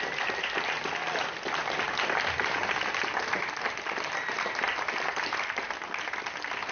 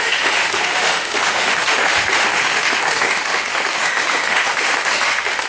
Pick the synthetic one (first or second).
second